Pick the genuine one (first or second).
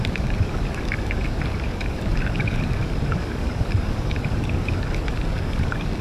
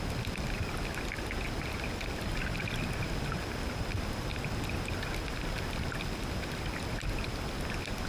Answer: second